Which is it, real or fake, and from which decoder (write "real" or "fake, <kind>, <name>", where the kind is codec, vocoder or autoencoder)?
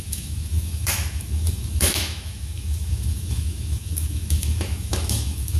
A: fake, autoencoder, DAC-VAE